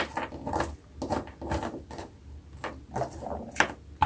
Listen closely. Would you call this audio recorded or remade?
recorded